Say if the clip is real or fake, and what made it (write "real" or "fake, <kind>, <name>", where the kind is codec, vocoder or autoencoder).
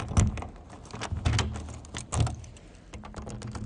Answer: real